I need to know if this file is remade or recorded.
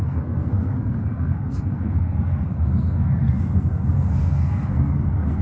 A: remade